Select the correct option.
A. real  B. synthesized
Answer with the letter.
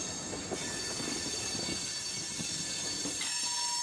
A